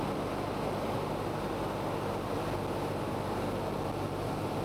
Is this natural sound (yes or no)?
yes